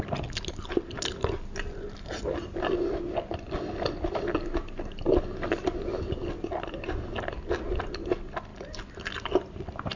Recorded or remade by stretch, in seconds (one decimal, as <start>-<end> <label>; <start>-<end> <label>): 0.0-10.0 recorded